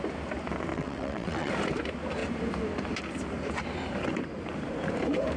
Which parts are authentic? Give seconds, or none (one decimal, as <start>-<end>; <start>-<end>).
0.0-0.7; 1.5-5.4